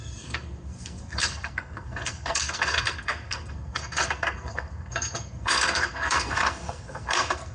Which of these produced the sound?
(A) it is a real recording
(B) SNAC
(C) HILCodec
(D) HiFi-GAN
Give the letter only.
B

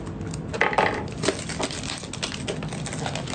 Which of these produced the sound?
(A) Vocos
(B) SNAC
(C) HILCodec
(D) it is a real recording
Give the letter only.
D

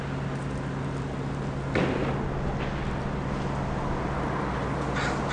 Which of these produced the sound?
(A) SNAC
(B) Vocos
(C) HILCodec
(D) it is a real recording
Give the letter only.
D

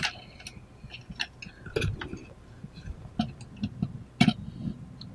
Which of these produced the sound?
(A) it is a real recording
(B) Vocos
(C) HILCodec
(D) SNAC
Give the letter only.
A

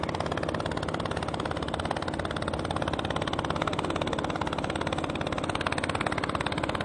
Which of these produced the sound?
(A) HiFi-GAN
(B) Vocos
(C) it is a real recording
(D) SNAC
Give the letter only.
C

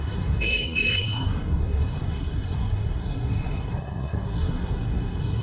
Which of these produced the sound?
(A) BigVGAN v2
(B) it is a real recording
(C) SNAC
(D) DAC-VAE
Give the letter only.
C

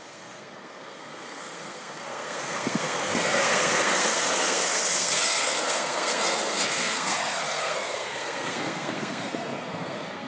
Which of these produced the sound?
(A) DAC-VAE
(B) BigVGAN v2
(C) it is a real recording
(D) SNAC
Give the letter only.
D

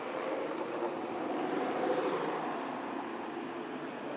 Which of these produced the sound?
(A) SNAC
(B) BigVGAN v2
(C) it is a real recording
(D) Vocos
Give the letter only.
C